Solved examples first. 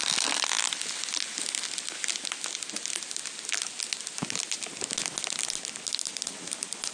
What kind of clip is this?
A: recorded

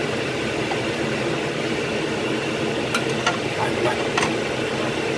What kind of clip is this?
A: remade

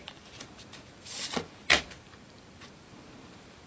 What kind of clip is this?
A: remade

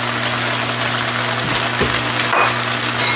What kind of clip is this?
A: recorded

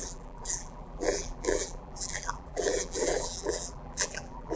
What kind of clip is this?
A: remade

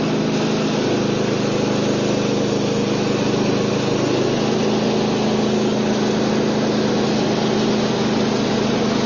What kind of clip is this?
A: recorded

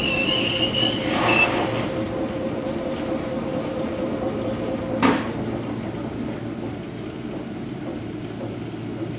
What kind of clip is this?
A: recorded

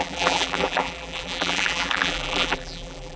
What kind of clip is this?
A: remade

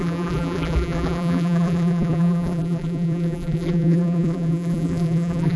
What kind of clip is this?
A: remade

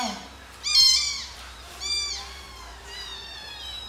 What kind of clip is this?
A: remade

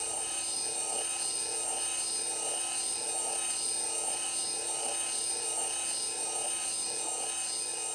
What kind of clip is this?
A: recorded